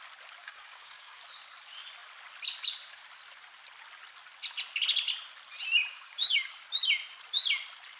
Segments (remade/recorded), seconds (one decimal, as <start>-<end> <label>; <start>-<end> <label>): 0.0-0.4 recorded; 0.4-1.2 remade; 1.2-5.9 recorded; 5.9-6.5 remade; 6.5-8.0 recorded